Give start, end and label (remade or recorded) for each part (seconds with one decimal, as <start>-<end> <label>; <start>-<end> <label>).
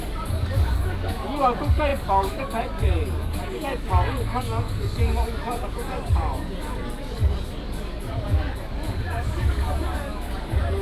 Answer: 0.0-10.8 remade